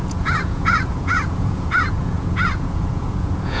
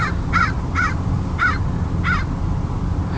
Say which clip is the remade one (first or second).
first